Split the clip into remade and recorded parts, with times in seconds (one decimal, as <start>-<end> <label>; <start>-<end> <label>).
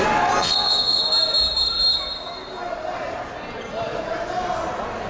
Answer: 0.0-0.4 recorded; 0.4-1.0 remade; 1.0-5.1 recorded